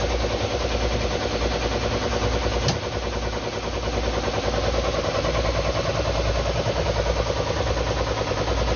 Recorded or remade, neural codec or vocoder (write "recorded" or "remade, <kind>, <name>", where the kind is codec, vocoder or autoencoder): recorded